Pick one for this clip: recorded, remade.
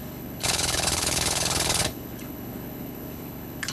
remade